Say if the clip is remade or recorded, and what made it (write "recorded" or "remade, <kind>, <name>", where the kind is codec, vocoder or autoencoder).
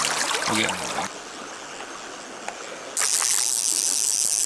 recorded